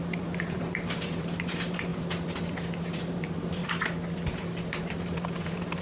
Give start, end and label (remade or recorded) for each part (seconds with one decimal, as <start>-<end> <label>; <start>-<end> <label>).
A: 0.0-1.9 remade; 1.9-2.8 recorded; 2.8-3.6 remade; 3.6-4.7 recorded; 4.7-5.8 remade